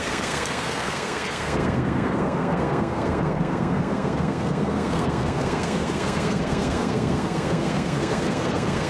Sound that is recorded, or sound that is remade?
remade